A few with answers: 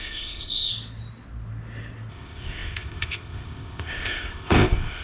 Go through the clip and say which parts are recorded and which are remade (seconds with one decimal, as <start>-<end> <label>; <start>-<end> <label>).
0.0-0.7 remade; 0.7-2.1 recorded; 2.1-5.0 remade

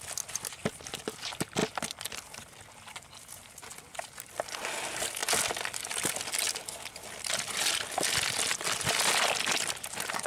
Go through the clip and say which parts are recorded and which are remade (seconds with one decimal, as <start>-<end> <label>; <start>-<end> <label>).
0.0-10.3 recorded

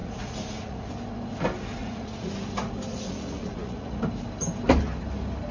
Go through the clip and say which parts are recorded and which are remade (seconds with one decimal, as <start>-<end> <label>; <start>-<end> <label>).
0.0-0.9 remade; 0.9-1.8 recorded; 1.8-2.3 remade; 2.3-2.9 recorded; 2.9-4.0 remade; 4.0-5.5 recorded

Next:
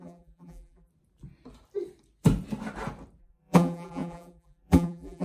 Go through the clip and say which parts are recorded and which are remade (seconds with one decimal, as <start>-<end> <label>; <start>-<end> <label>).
0.0-0.9 remade; 0.9-3.2 recorded; 3.2-5.2 remade